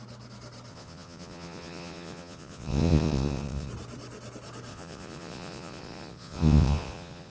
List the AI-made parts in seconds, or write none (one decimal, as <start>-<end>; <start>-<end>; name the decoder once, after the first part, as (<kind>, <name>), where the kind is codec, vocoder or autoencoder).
0.7-3.7 (vocoder, Vocos); 4.7-7.3